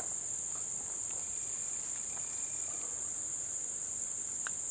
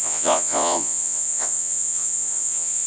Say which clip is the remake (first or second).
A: second